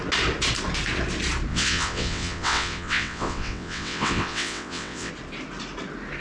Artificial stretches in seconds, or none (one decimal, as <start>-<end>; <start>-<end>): 1.5-5.1